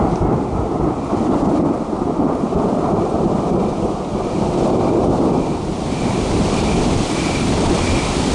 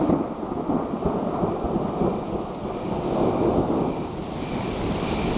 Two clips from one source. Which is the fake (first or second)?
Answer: first